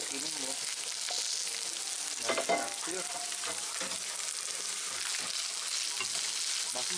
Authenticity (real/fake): real